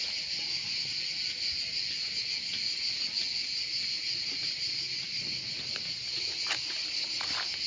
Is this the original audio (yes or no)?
yes